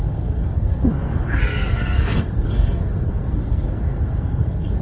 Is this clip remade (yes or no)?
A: yes